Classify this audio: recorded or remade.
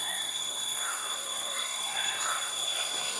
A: remade